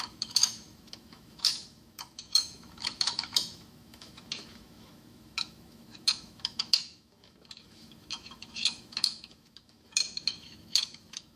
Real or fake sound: fake